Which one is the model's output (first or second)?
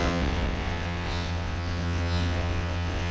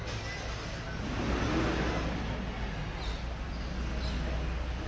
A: first